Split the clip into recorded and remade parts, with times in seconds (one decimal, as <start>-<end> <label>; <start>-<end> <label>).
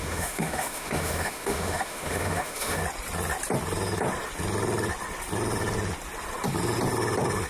0.0-2.8 remade; 2.8-7.5 recorded